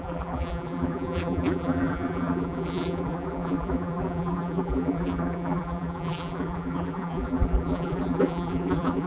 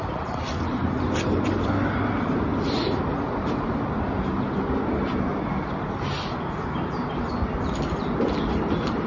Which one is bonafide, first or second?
second